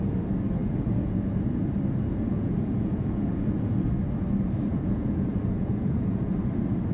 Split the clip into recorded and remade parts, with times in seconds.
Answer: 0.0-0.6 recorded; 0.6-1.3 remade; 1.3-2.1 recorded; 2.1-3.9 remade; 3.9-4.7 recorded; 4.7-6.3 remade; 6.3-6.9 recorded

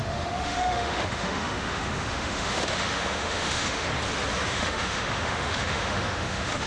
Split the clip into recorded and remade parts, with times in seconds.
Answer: 0.0-3.9 remade; 3.9-4.5 recorded; 4.5-6.7 remade

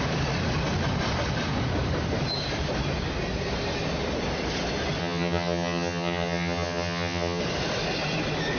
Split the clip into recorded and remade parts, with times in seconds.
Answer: 0.0-5.0 recorded; 5.0-7.4 remade; 7.4-8.6 recorded

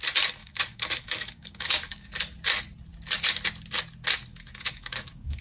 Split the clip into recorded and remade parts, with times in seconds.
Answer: 0.0-0.4 recorded; 0.4-2.1 remade; 2.1-4.3 recorded; 4.3-5.4 remade

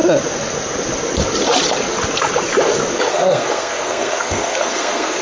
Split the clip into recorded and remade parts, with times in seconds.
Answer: 0.0-3.1 recorded; 3.1-5.2 remade

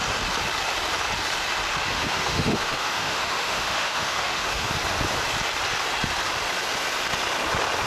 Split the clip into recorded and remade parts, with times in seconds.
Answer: 0.0-1.9 recorded; 1.9-4.7 remade; 4.7-7.9 recorded